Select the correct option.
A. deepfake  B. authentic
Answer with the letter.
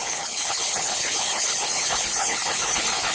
A